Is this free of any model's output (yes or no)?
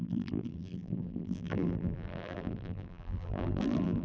no